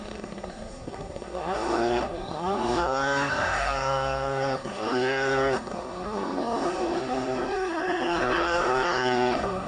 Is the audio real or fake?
fake